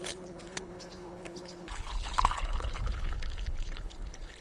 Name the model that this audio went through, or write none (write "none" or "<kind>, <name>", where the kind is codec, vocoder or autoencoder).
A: codec, HILCodec